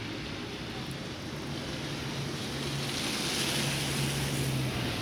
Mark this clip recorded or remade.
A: recorded